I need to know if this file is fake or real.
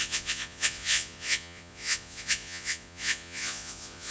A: fake